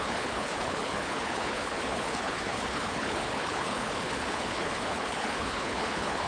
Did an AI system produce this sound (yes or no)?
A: yes